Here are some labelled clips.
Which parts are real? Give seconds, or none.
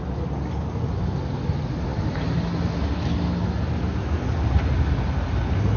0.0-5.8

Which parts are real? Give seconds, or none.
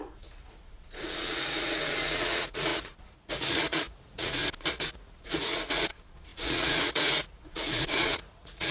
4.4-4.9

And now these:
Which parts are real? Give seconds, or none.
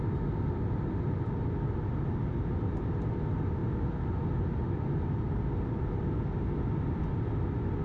0.0-7.8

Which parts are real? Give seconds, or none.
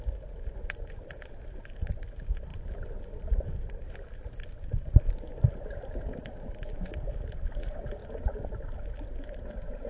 0.0-9.9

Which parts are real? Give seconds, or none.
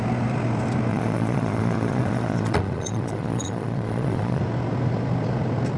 0.0-0.9; 4.4-5.8